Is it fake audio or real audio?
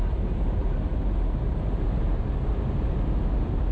real